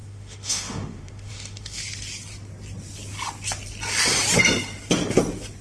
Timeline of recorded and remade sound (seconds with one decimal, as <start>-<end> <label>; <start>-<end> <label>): 0.0-1.8 remade; 1.8-5.6 recorded